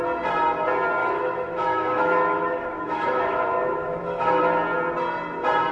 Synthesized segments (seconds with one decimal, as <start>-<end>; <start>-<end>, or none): 1.0-4.4